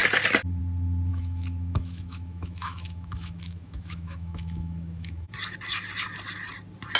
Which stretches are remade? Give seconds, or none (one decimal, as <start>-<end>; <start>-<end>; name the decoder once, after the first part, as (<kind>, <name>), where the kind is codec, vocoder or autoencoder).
1.1-5.3 (autoencoder, DAC-VAE)